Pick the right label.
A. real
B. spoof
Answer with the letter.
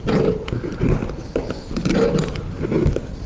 A